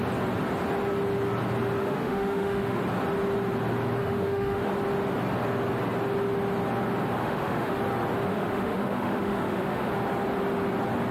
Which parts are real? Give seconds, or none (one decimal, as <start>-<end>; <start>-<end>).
0.0-1.8; 2.8-4.0; 4.7-7.2; 7.8-8.3; 9.9-11.1